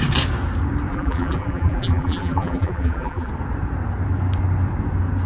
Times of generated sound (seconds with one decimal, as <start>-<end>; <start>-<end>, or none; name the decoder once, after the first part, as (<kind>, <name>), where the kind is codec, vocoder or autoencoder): 0.9-3.3 (vocoder, BigVGAN v2)